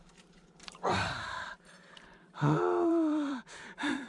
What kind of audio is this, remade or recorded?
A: remade